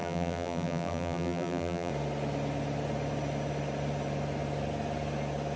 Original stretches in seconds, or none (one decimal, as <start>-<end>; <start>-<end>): 1.9-5.6